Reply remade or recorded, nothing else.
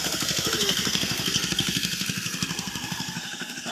remade